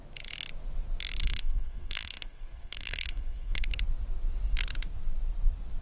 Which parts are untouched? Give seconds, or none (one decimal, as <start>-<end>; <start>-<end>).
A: 0.0-1.2; 3.7-5.8